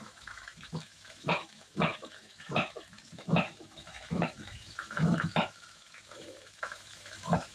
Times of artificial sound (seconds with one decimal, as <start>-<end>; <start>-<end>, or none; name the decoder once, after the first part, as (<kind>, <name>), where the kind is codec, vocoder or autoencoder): 0.0-7.5 (autoencoder, DAC-VAE)